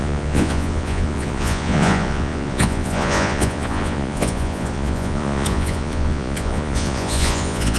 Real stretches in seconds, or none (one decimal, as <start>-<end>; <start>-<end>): none